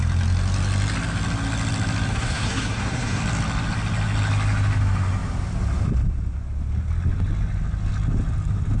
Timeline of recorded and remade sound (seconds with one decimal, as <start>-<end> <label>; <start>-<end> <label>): 0.0-2.1 recorded; 2.1-3.2 remade; 3.2-8.8 recorded